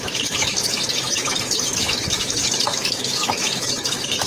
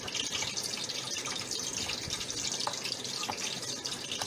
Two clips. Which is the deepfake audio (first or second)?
first